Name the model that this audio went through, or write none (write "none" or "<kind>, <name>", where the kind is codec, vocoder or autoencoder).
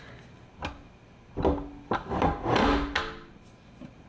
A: none